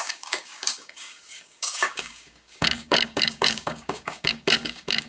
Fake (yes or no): yes